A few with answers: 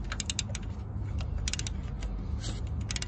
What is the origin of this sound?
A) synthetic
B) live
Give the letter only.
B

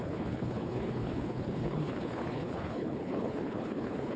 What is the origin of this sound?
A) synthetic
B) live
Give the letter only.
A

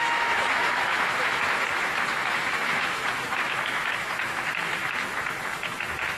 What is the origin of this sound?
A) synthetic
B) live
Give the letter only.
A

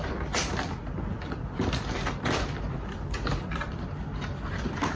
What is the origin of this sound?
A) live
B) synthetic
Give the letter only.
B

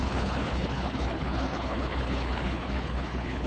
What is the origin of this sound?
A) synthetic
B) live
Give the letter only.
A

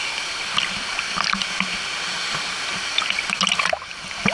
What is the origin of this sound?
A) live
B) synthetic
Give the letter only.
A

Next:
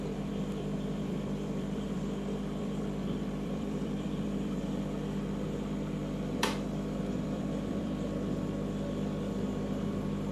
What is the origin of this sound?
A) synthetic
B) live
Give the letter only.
A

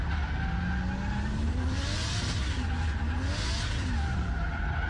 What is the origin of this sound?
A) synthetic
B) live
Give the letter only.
B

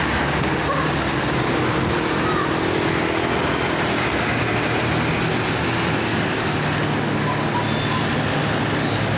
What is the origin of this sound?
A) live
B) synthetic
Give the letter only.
A